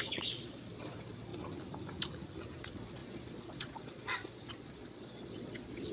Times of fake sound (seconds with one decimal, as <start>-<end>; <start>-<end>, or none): 0.0-1.3; 2.6-5.9